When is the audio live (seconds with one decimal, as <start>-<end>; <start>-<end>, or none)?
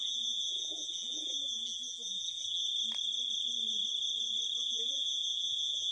2.6-4.6